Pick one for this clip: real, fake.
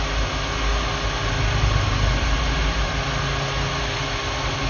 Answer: real